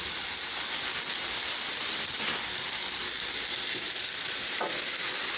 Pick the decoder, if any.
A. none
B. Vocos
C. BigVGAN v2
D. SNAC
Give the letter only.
A